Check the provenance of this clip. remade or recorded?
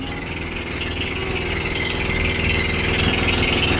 recorded